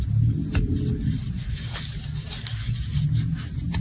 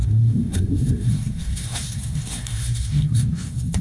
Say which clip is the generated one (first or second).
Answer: second